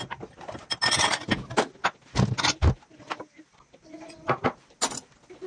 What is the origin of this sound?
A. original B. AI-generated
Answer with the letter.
A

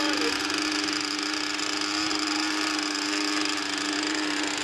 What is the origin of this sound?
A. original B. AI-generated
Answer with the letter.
A